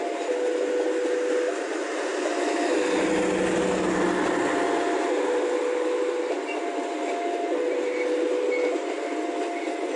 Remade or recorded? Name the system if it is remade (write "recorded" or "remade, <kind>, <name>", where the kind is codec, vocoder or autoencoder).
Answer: recorded